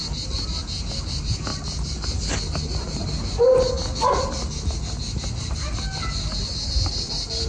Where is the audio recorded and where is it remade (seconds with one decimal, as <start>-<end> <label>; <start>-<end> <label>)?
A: 0.0-7.5 recorded